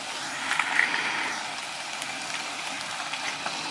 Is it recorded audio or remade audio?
recorded